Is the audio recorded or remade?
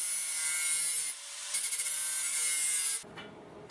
recorded